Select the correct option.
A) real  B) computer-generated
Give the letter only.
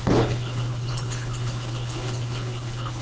B